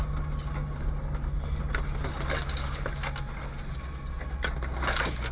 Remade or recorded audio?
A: recorded